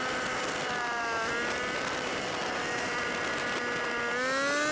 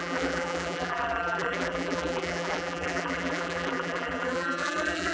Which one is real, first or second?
first